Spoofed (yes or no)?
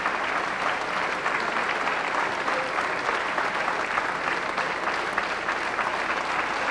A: no